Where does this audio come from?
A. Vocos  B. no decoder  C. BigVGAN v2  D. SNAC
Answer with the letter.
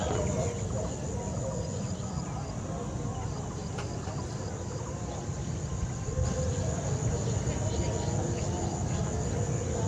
B